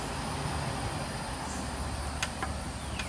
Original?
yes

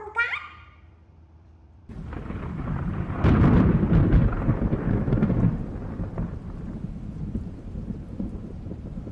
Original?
no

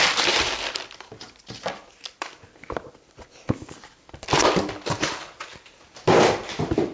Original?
no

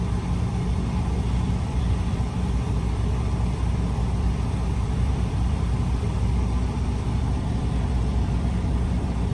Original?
no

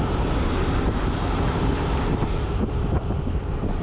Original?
no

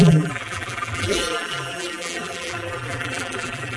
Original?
no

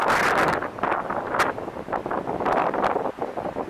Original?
yes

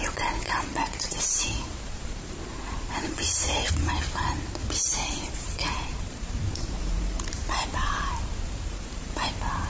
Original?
no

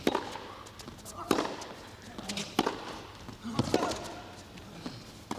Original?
yes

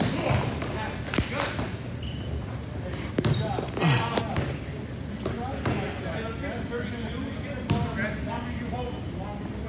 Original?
yes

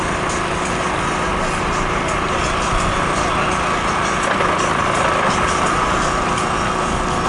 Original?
yes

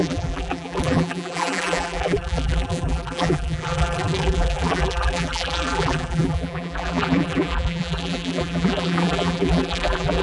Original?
no